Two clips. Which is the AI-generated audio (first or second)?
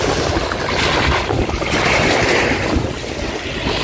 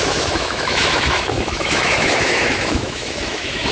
second